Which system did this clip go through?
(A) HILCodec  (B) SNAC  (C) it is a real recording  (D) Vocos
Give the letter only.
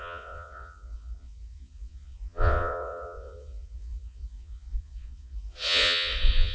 D